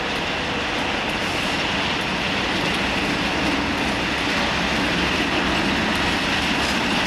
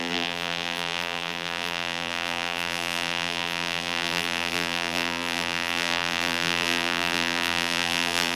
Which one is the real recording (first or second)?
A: first